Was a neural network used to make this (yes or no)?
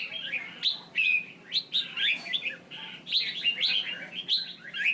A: no